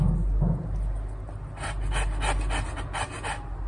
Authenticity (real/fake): real